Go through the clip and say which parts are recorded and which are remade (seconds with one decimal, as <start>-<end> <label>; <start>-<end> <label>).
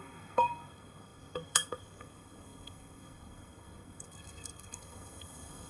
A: 0.0-5.7 remade